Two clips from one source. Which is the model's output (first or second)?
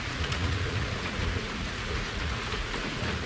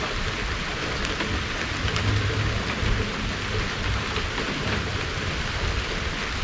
first